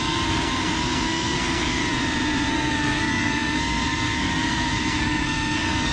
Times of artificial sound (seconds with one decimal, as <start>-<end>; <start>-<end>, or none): 0.0-1.8; 2.5-5.9